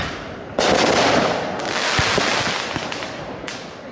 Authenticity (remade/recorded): recorded